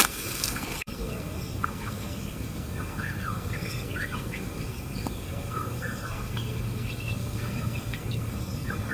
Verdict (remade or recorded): remade